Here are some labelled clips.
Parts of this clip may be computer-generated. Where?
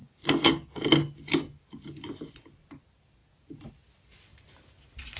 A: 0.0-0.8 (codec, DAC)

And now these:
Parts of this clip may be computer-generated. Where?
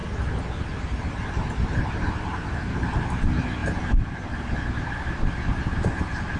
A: none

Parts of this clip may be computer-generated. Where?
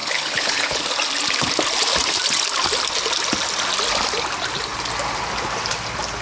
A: 0.0-0.8 (codec, HILCodec)